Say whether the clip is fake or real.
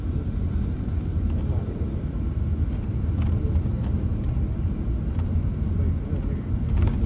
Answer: real